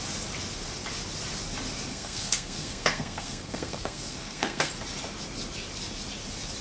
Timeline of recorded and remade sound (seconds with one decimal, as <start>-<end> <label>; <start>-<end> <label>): 0.0-1.9 recorded; 1.9-4.7 remade; 4.7-6.6 recorded